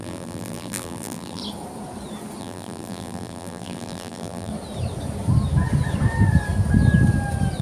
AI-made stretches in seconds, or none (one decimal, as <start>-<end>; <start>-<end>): 0.0-1.4; 2.4-4.5